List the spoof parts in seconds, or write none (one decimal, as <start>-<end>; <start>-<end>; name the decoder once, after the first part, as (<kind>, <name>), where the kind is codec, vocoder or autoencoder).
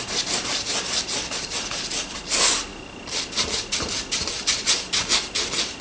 none